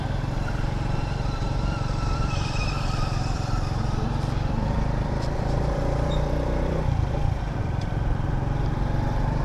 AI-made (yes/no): yes